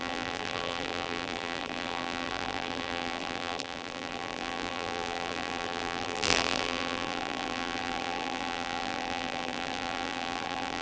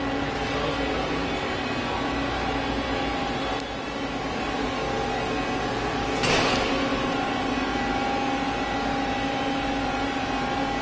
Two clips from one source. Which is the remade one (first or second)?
first